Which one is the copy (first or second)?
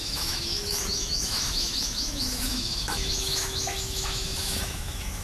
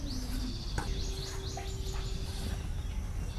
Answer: first